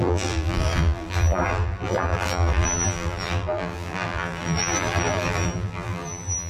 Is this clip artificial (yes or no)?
yes